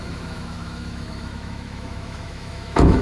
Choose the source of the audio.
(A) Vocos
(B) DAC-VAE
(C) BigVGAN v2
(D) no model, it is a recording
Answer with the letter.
B